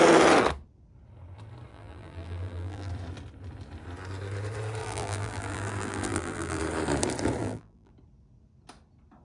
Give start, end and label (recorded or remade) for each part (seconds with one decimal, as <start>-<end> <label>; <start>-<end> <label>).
0.0-1.7 recorded; 1.7-2.9 remade; 2.9-4.8 recorded; 4.8-6.6 remade; 6.6-7.4 recorded; 7.4-7.9 remade; 7.9-9.2 recorded